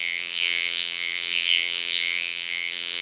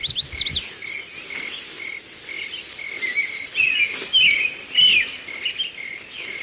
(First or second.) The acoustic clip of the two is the second